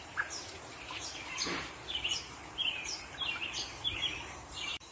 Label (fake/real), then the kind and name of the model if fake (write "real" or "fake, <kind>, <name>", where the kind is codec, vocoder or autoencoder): fake, vocoder, BigVGAN v2